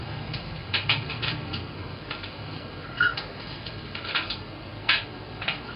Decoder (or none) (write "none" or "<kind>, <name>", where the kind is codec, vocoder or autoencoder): codec, SNAC